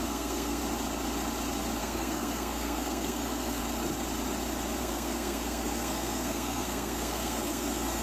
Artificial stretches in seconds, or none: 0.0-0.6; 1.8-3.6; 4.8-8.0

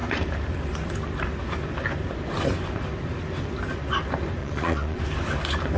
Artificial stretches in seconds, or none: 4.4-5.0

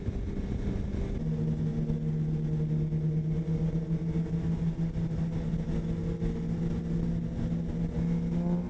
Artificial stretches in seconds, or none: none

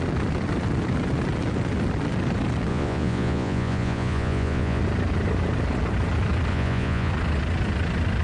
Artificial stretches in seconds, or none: 2.7-4.8; 6.5-7.1

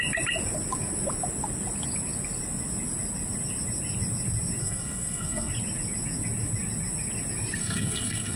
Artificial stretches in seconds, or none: 4.6-5.5; 7.6-8.4